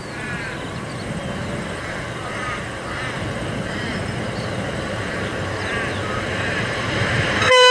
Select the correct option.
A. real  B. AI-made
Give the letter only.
A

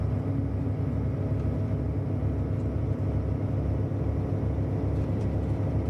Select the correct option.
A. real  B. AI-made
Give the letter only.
A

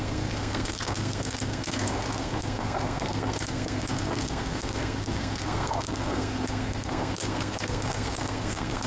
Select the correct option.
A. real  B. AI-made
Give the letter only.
B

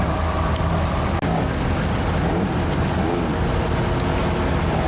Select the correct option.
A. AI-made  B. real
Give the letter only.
B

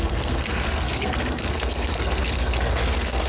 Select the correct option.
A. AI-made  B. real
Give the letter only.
A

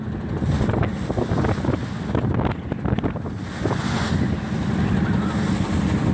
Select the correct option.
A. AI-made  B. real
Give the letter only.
B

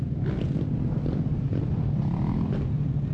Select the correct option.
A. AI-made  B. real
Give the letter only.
B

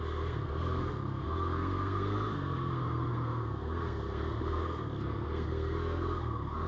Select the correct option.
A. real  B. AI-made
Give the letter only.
B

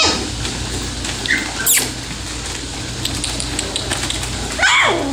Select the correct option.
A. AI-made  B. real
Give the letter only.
B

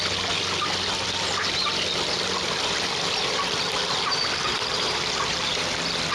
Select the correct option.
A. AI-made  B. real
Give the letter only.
B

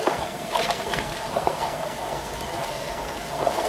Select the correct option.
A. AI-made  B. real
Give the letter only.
A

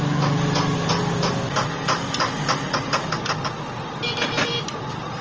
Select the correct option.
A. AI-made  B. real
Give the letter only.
B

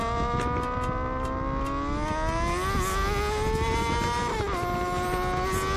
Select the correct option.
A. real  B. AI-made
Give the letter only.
A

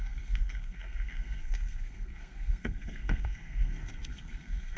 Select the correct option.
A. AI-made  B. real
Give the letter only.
A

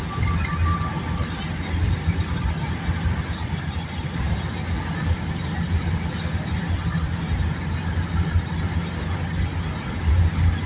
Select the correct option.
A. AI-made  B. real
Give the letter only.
B